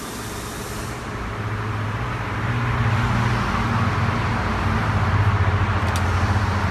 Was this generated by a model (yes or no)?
no